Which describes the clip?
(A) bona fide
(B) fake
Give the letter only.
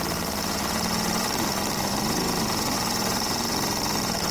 B